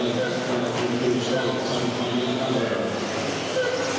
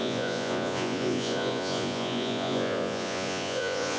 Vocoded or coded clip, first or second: second